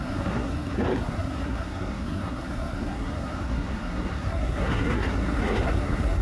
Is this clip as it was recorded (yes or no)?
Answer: no